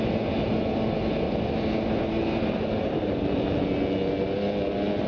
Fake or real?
real